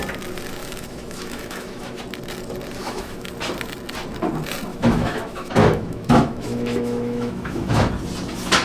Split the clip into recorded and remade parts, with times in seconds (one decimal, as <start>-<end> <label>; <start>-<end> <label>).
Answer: 0.0-0.6 recorded; 0.6-2.0 remade; 2.0-2.8 recorded; 2.8-3.3 remade; 3.3-4.7 recorded; 4.7-7.9 remade; 7.9-8.6 recorded